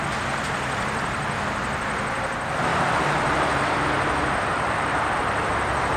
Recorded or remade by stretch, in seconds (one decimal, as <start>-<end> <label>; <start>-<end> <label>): 0.0-2.7 recorded; 2.7-3.7 remade; 3.7-4.5 recorded; 4.5-5.2 remade; 5.2-6.0 recorded